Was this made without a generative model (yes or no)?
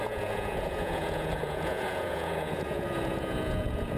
no